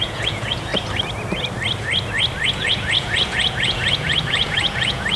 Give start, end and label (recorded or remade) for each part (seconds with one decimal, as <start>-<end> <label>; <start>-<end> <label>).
0.0-0.7 remade; 0.7-2.5 recorded; 2.5-5.2 remade